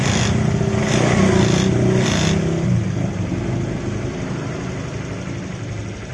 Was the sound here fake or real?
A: real